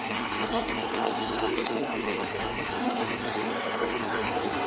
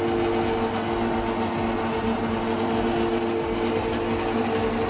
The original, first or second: second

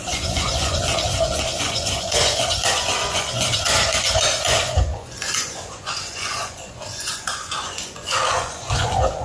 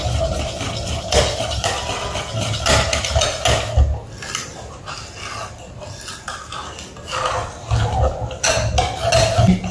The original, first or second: second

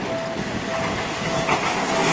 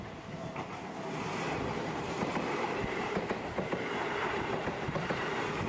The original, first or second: first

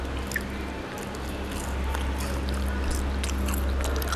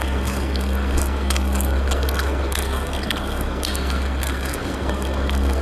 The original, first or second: first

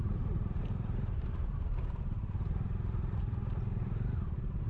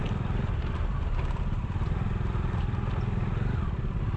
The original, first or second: second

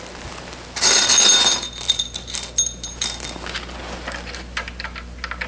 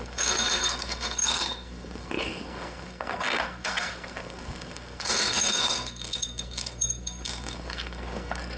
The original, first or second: first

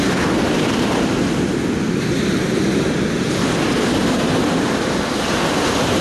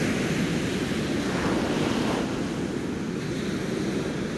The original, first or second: second